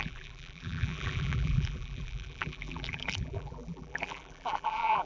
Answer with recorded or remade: remade